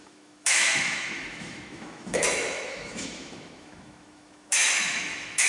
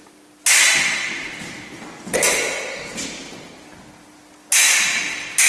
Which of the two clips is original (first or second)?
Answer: second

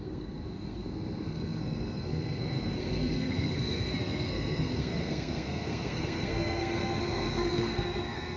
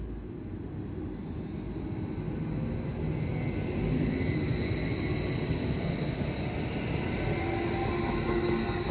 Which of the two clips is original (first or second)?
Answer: second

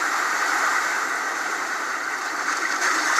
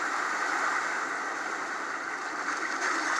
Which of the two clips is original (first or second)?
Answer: second